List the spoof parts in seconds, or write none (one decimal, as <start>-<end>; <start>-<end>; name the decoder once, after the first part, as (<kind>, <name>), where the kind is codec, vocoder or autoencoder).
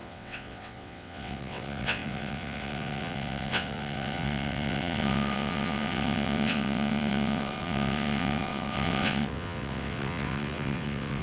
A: 0.0-11.2 (vocoder, WaveNeXt)